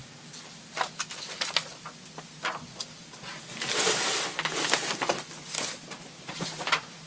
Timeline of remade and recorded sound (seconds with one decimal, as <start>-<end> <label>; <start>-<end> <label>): 0.0-7.1 recorded